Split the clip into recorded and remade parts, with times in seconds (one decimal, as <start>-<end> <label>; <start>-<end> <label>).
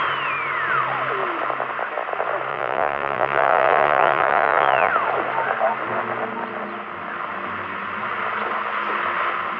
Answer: 0.0-2.5 recorded; 2.5-4.9 remade; 4.9-9.6 recorded